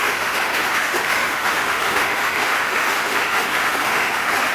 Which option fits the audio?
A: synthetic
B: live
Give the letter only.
A